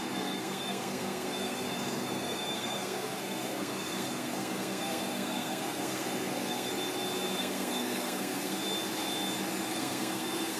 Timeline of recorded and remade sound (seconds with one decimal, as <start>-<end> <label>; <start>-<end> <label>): 0.0-6.7 remade; 6.7-7.4 recorded; 7.4-8.6 remade; 8.6-9.7 recorded; 9.7-10.6 remade